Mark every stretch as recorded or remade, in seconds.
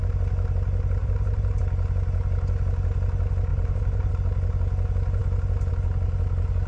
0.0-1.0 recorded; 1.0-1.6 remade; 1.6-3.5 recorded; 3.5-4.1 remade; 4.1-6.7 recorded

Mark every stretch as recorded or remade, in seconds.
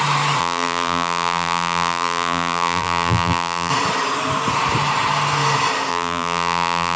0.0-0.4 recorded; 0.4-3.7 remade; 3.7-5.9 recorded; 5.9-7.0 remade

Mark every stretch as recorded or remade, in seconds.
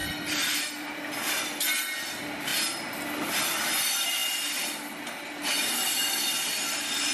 0.0-0.7 remade; 0.7-7.1 recorded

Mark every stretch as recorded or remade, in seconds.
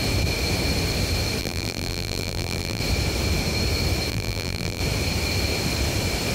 0.0-1.4 recorded; 1.4-2.8 remade; 2.8-4.1 recorded; 4.1-4.8 remade; 4.8-6.3 recorded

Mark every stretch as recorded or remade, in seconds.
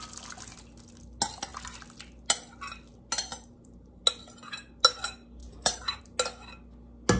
0.0-3.3 recorded; 3.3-4.0 remade; 4.0-5.4 recorded; 5.4-6.0 remade; 6.0-7.2 recorded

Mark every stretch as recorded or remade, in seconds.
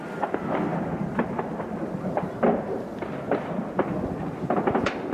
0.0-5.1 recorded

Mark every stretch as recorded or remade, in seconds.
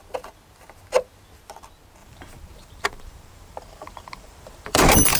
0.0-2.0 recorded; 2.0-5.2 remade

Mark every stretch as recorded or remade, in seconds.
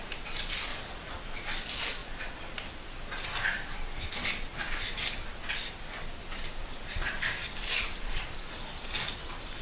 0.0-0.7 recorded; 0.7-1.5 remade; 1.5-6.6 recorded; 6.6-8.8 remade; 8.8-9.6 recorded